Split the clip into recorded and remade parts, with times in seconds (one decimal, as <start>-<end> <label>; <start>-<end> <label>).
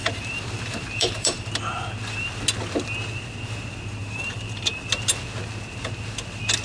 0.0-1.5 remade; 1.5-4.0 recorded; 4.0-4.8 remade; 4.8-6.6 recorded